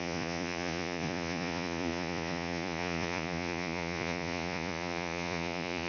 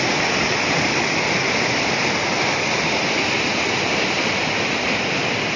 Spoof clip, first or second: first